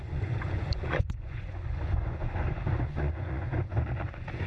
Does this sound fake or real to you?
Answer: fake